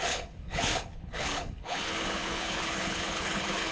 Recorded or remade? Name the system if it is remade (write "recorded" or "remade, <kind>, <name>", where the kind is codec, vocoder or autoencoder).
remade, codec, HILCodec